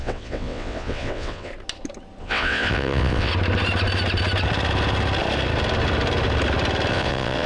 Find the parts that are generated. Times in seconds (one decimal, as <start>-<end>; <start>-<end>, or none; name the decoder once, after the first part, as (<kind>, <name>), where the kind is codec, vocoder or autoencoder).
0.0-1.5 (vocoder, WaveNeXt); 2.2-3.3; 6.9-7.5